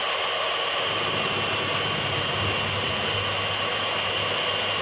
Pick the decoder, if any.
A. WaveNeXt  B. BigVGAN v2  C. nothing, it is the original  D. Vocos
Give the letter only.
C